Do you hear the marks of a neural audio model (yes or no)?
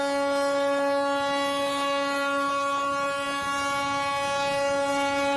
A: no